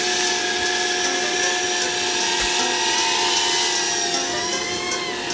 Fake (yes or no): no